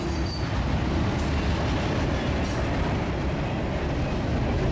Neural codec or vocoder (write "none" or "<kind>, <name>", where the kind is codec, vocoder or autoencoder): none